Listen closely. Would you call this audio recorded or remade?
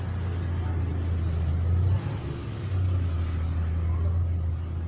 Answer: recorded